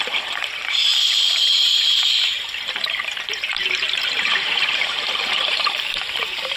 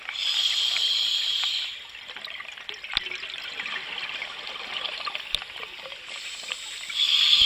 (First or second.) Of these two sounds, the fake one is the first